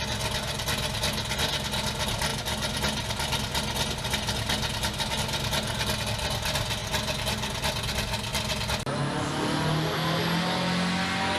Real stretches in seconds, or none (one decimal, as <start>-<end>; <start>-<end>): 0.0-11.4